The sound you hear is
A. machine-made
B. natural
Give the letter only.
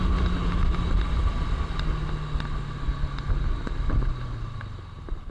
B